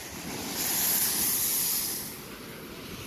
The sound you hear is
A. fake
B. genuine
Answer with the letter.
B